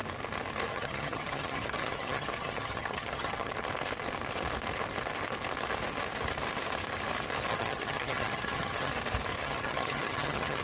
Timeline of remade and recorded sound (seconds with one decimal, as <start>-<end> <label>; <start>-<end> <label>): 0.0-0.7 recorded; 0.7-3.5 remade; 3.5-7.5 recorded; 7.5-8.9 remade; 8.9-9.4 recorded; 9.4-10.6 remade